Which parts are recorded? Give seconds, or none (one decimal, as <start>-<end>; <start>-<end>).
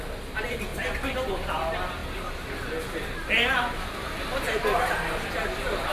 0.0-5.9